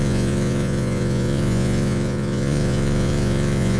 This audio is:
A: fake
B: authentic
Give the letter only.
A